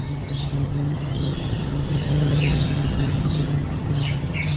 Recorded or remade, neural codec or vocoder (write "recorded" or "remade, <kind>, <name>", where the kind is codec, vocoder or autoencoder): remade, vocoder, HiFi-GAN